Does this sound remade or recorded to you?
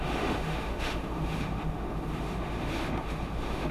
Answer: remade